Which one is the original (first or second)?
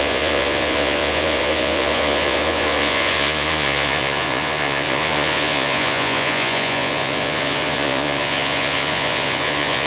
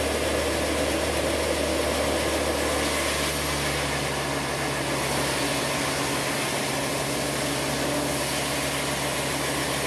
second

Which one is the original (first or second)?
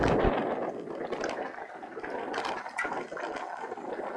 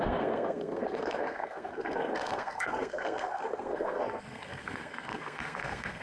first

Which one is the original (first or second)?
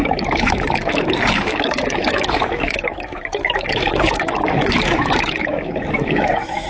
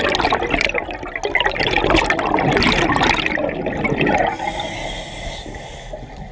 second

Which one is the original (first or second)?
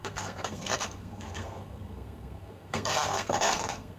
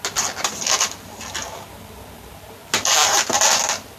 second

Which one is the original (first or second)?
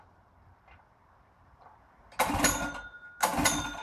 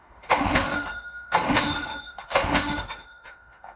first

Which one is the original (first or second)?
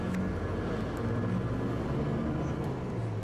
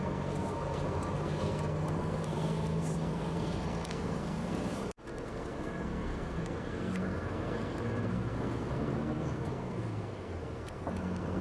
first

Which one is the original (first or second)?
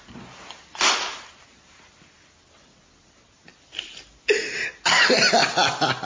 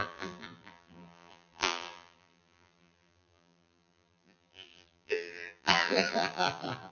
first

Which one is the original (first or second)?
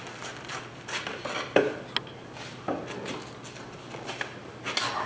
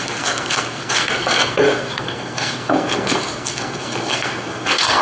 first